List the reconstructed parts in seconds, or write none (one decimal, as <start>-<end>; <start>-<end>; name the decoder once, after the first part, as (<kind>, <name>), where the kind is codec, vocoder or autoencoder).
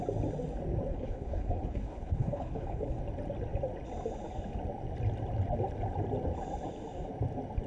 0.9-3.0 (codec, HILCodec)